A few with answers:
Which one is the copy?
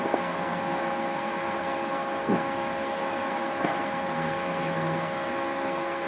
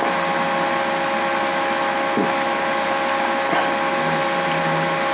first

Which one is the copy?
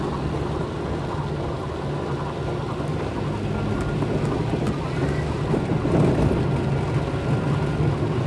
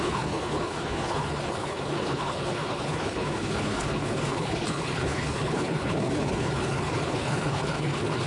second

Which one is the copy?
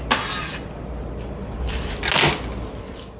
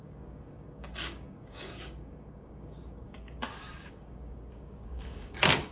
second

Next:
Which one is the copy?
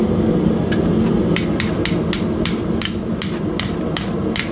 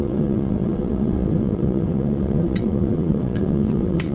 second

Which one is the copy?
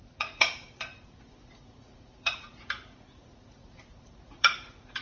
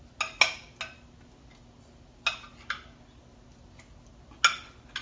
first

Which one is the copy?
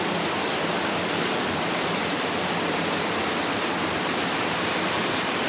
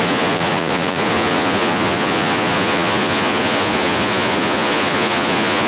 second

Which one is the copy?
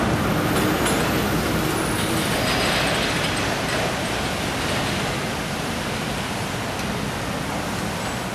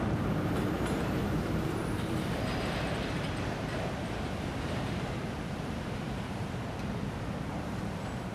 second